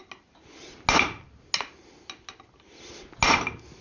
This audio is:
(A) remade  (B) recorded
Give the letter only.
B